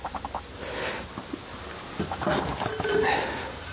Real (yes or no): yes